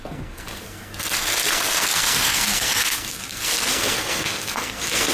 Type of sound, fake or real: fake